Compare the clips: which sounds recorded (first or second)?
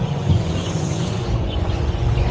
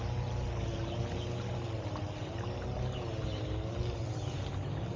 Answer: second